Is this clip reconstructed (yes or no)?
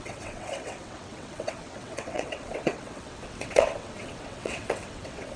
yes